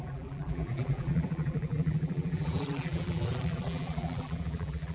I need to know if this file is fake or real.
fake